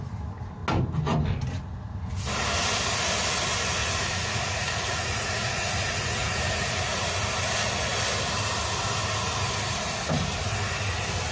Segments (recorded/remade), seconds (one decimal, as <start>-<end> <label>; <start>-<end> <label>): 0.0-3.8 recorded; 3.8-7.1 remade; 7.1-11.3 recorded